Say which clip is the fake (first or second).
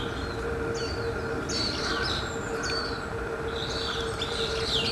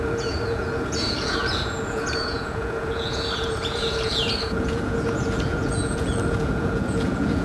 second